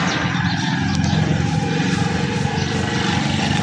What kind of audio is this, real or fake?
real